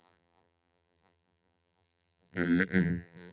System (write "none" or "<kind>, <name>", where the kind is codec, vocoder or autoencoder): vocoder, BigVGAN v2